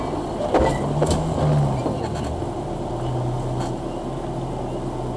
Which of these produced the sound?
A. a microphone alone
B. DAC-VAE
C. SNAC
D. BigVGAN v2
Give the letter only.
A